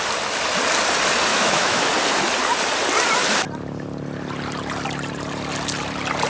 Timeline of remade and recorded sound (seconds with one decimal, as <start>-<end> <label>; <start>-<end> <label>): 0.0-1.3 recorded; 1.3-1.9 remade; 1.9-6.3 recorded